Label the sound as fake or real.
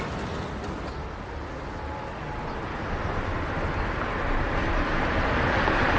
real